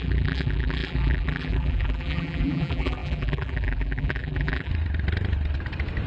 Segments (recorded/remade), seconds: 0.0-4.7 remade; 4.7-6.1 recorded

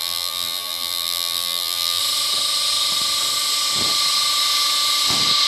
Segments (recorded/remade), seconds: 0.0-2.0 remade; 2.0-5.5 recorded

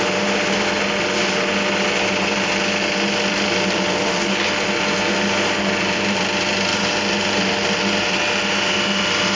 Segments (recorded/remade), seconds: 0.0-9.4 recorded

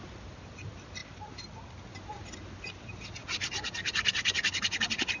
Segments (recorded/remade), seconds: 0.0-1.0 recorded; 1.0-1.8 remade; 1.8-5.2 recorded

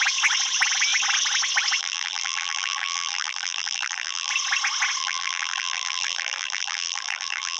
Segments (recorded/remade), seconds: 0.0-1.8 recorded; 1.8-4.3 remade; 4.3-5.0 recorded; 5.0-7.6 remade

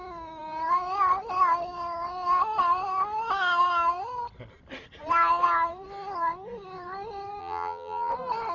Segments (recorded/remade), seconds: 0.0-7.4 recorded; 7.4-8.1 remade; 8.1-8.5 recorded

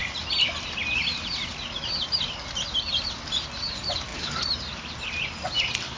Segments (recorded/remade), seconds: 0.0-6.0 recorded

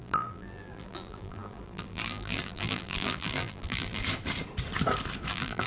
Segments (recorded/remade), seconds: 0.0-4.0 remade; 4.0-5.3 recorded; 5.3-5.7 remade